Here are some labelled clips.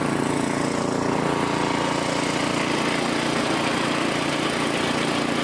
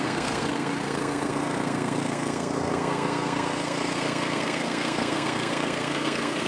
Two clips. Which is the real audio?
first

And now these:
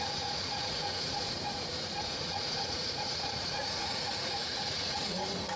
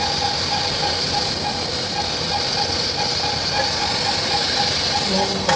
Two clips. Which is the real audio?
second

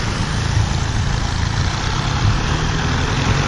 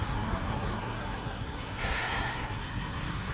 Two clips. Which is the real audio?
first